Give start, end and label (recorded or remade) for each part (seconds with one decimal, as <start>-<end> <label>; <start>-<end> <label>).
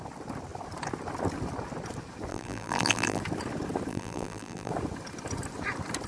0.0-2.3 recorded; 2.3-3.2 remade; 3.2-3.9 recorded; 3.9-4.7 remade; 4.7-6.1 recorded